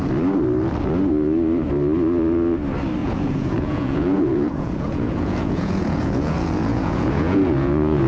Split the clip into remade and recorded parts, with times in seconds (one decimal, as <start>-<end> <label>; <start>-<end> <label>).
0.0-3.0 recorded; 3.0-8.1 remade